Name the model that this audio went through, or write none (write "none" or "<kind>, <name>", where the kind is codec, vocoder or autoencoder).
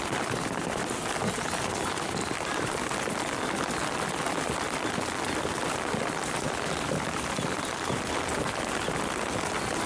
vocoder, BigVGAN v2